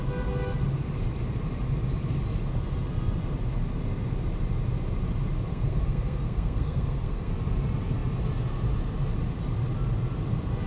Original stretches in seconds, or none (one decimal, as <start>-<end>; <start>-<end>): 0.0-5.5; 7.3-10.7